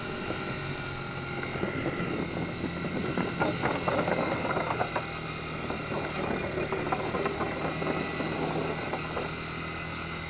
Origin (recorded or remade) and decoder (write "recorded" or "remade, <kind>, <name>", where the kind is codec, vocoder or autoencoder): recorded